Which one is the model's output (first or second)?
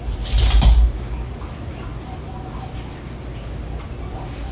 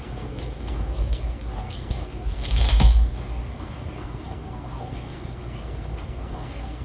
second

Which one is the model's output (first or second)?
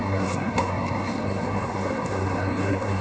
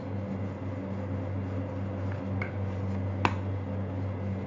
first